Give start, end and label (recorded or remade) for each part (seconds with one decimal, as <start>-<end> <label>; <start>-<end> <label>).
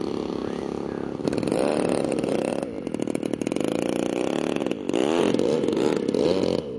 0.0-0.4 remade; 0.4-1.2 recorded; 1.2-1.7 remade; 1.7-2.5 recorded; 2.5-5.0 remade; 5.0-6.2 recorded; 6.2-6.8 remade